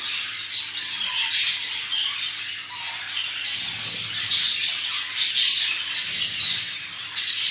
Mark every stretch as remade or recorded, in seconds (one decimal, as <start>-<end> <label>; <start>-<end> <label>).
0.0-3.2 recorded; 3.2-5.0 remade; 5.0-7.5 recorded